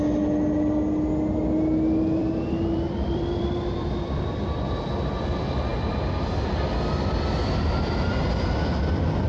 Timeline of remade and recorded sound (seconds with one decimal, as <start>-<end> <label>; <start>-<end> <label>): 0.0-2.2 recorded; 2.2-4.2 remade; 4.2-9.3 recorded

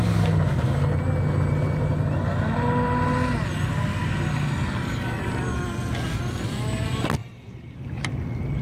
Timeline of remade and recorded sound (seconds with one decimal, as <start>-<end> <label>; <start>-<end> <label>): 0.0-7.2 recorded; 7.2-8.1 remade; 8.1-8.6 recorded